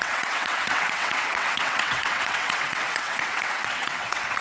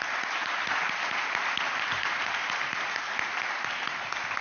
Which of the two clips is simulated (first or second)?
first